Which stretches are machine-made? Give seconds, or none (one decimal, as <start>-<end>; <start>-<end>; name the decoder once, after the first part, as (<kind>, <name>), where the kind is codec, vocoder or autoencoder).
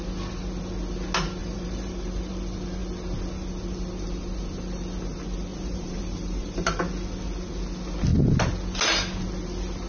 1.4-2.3 (vocoder, BigVGAN v2); 5.5-6.8